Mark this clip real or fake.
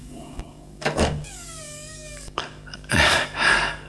fake